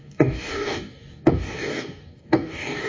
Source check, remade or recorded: remade